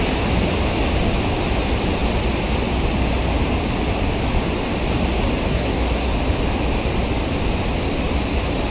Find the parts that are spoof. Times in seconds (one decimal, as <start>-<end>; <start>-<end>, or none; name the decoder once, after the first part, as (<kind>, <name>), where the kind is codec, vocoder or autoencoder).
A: 5.5-6.1 (codec, SNAC)